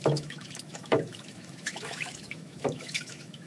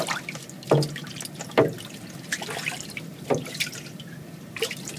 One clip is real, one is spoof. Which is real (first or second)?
second